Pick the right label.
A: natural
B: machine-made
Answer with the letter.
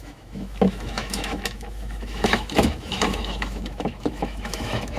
B